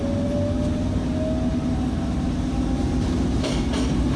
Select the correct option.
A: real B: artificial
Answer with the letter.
A